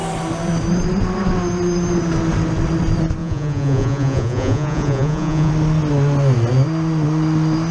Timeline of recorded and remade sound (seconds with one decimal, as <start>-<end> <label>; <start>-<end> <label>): 0.0-3.2 recorded; 3.2-5.5 remade; 5.5-7.7 recorded